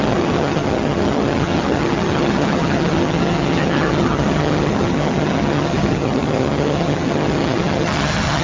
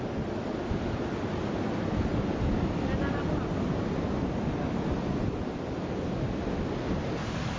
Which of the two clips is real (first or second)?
second